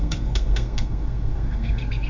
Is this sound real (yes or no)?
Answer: no